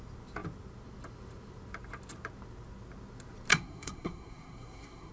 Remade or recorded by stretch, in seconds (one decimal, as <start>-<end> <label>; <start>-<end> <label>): 0.0-3.5 recorded; 3.5-5.1 remade